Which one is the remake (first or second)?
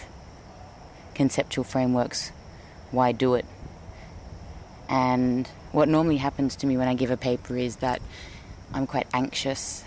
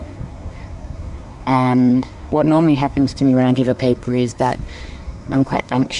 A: second